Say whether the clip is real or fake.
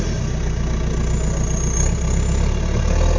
real